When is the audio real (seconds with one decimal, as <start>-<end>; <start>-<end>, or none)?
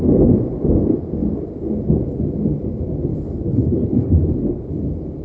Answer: 0.0-3.1; 4.7-5.2